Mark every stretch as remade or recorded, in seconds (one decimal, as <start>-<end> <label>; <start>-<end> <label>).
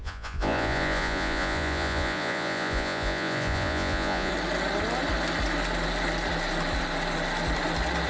0.0-4.3 remade; 4.3-8.1 recorded